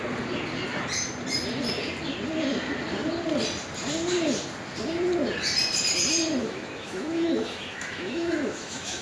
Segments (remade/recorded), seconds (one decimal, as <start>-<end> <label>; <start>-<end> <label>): 0.0-6.4 recorded; 6.4-9.0 remade